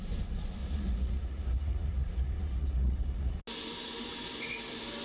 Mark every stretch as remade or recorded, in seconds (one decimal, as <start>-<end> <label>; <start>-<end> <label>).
0.0-0.6 recorded; 0.6-3.4 remade; 3.4-5.0 recorded